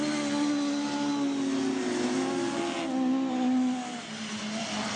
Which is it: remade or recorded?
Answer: recorded